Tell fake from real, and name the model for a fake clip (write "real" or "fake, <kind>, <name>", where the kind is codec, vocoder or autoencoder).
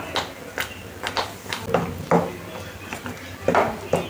real